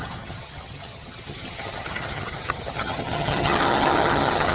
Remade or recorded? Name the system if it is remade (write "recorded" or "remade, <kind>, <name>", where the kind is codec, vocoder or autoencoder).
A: remade, vocoder, HiFi-GAN